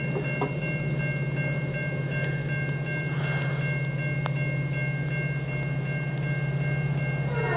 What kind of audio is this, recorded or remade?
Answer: recorded